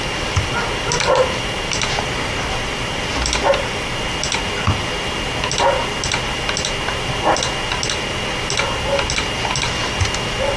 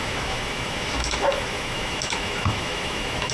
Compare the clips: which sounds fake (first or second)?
second